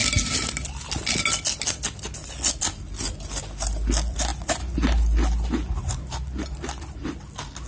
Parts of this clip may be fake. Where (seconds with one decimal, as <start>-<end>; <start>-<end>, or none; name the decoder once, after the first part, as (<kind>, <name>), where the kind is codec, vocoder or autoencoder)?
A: none